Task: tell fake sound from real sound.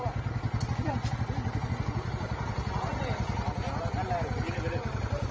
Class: real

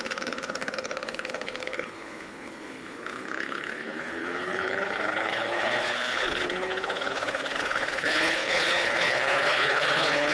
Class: fake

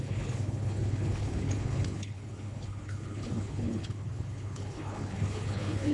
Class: fake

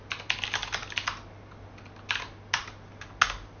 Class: real